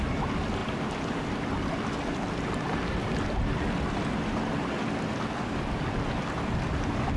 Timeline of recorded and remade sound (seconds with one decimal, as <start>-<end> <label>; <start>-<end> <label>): 0.0-7.2 recorded